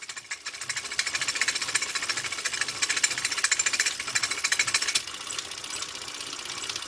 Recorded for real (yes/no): yes